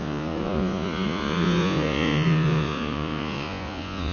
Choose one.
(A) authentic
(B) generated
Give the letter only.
B